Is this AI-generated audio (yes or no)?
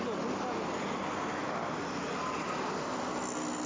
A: no